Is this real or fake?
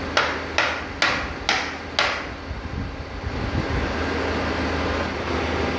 real